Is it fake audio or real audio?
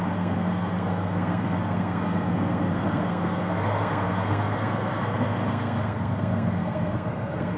fake